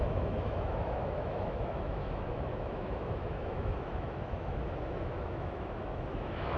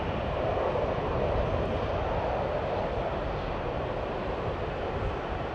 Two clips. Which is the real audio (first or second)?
second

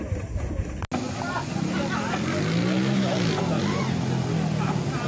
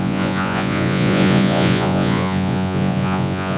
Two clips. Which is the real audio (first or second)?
first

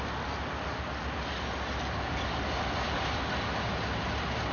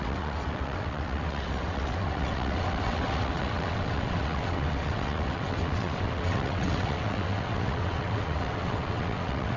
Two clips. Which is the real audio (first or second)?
first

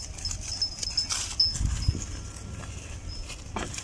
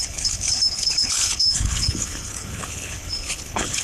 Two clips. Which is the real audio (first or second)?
first